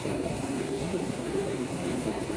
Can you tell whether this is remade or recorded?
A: remade